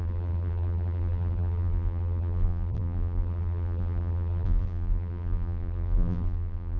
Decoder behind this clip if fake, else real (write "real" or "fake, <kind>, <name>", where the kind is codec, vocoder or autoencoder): fake, vocoder, BigVGAN v2